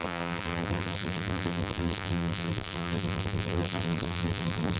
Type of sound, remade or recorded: remade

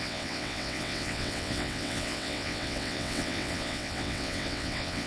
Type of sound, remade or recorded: remade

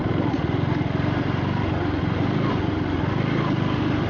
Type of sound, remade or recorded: recorded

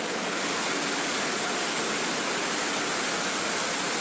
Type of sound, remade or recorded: recorded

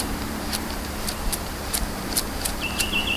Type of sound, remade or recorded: remade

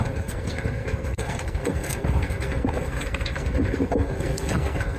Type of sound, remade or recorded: remade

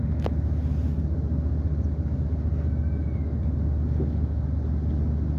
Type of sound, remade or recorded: recorded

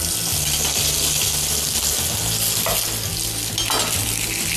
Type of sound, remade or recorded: recorded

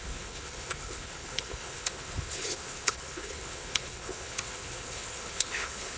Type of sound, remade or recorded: remade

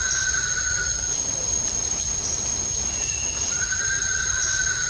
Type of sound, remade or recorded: recorded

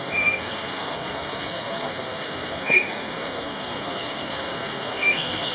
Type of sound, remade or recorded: remade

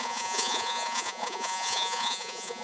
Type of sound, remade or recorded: remade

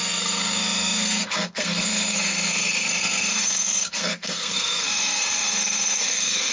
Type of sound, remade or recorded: remade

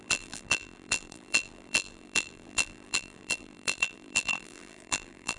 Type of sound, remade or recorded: remade